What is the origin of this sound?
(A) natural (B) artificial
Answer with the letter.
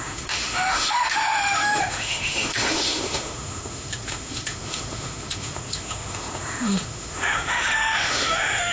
B